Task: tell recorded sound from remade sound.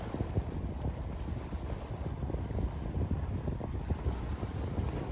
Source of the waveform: recorded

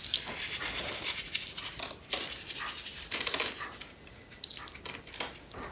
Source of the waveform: recorded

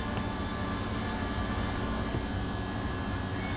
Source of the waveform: recorded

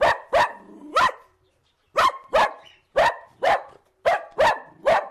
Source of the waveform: remade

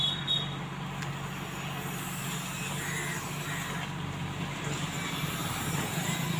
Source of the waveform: recorded